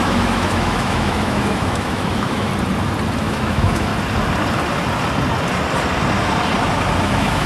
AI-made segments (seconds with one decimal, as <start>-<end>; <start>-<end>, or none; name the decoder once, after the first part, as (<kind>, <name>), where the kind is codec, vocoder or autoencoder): 0.0-2.5 (autoencoder, DAC-VAE); 3.2-3.9; 7.0-7.5